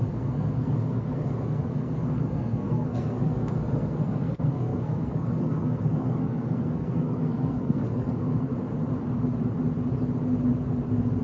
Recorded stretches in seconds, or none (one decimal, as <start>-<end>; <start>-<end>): 8.5-11.2